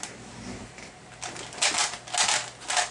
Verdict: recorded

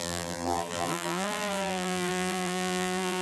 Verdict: remade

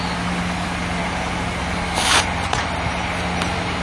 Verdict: recorded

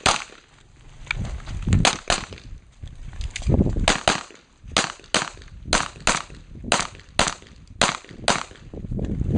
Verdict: recorded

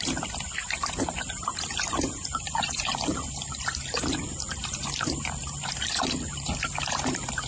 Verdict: remade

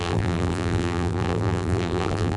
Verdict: remade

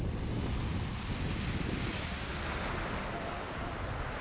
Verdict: recorded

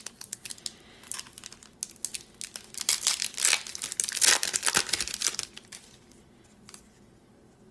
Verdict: recorded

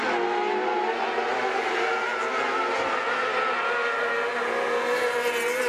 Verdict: recorded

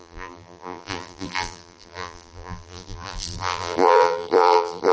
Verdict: remade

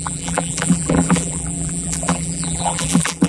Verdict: remade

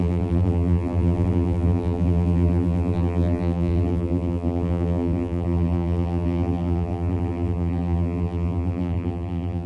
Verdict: remade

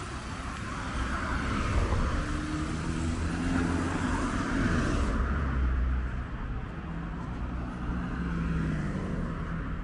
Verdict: recorded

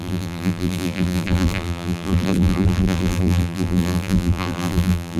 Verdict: remade